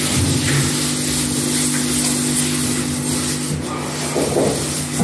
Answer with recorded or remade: recorded